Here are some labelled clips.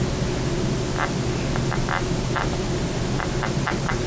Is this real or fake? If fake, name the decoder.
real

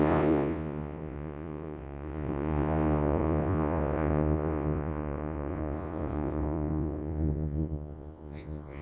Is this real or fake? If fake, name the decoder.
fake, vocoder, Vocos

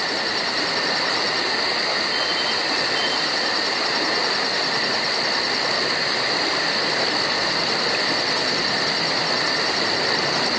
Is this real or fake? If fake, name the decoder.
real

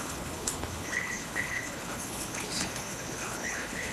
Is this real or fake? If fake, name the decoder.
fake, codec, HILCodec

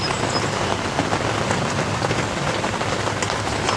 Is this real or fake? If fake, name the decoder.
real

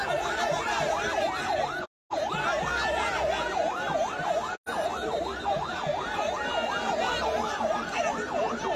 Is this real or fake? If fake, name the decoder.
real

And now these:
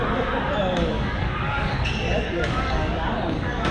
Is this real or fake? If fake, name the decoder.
fake, codec, DAC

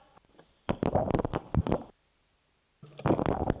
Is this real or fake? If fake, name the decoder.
real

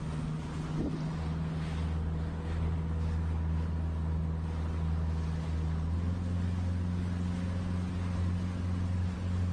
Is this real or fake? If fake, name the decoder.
real